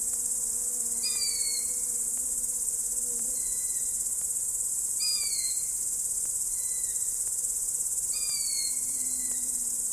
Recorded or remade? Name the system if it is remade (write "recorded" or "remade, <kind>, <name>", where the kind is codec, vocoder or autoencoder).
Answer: remade, vocoder, BigVGAN v2